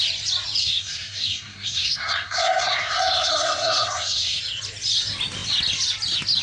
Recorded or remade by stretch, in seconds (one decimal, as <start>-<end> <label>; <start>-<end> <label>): 0.0-0.6 recorded; 0.6-4.4 remade; 4.4-6.4 recorded